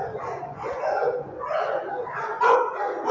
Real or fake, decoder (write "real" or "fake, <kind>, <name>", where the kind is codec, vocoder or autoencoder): fake, vocoder, Vocos